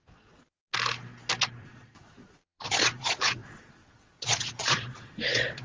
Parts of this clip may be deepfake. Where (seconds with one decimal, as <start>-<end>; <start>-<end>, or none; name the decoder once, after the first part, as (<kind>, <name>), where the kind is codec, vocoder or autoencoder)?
0.0-0.6 (vocoder, Vocos); 1.6-5.6